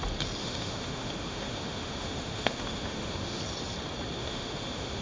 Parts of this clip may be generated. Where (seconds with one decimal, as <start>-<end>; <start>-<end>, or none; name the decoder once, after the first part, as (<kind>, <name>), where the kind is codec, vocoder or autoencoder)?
0.4-3.4 (autoencoder, DAC-VAE); 4.2-5.0

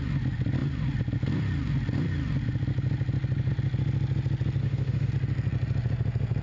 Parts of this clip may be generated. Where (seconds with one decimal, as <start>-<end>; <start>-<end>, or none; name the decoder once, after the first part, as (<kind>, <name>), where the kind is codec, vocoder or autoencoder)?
4.6-5.1 (autoencoder, DAC-VAE)

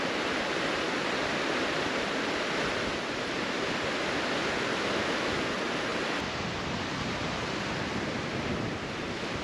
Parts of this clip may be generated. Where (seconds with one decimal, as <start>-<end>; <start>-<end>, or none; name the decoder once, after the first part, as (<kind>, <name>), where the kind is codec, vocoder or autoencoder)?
none

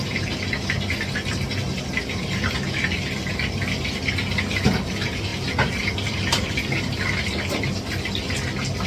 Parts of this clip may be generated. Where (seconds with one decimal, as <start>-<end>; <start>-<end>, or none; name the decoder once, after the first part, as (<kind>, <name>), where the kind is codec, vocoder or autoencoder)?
none

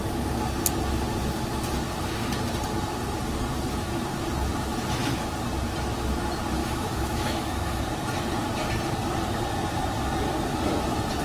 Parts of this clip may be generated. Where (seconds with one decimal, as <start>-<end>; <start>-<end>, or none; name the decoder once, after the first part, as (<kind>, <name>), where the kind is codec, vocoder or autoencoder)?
6.6-7.8 (autoencoder, DAC-VAE)

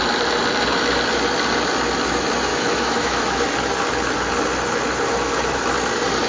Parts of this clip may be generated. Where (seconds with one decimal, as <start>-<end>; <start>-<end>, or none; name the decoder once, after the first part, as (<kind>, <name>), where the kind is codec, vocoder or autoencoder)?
2.5-3.4 (autoencoder, DAC-VAE)

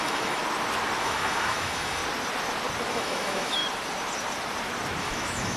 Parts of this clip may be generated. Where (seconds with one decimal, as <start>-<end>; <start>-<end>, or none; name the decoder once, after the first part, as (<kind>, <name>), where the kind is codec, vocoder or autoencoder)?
0.0-0.4 (autoencoder, DAC-VAE); 1.0-2.0; 2.9-3.6; 5.0-5.6

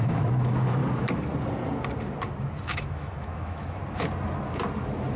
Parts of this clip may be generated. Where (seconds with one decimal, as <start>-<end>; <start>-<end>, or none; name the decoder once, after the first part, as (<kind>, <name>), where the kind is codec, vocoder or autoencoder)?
0.0-0.8 (autoencoder, DAC-VAE); 2.6-3.8